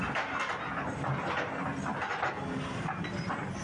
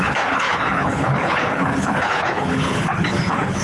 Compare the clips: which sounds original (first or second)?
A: first